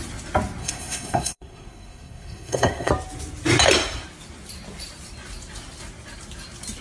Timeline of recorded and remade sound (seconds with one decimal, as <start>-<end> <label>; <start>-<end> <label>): 0.0-0.6 recorded; 0.6-2.9 remade; 2.9-6.8 recorded